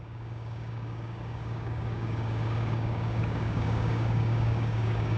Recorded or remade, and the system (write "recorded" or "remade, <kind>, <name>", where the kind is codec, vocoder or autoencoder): remade, codec, DAC